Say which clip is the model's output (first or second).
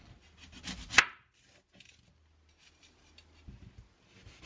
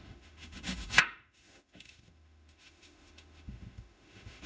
second